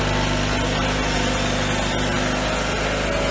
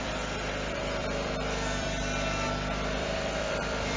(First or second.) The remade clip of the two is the second